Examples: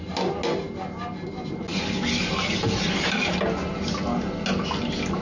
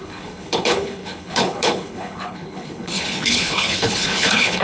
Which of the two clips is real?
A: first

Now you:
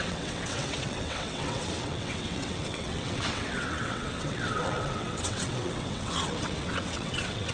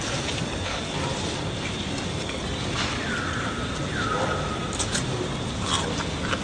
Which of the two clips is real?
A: second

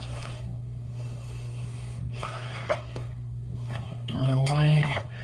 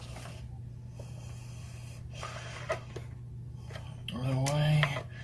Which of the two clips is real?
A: second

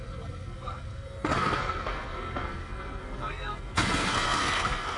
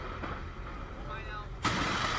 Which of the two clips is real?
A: second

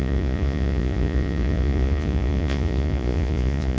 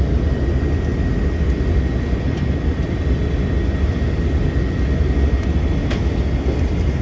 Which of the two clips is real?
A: second